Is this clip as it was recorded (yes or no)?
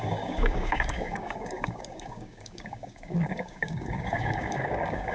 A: no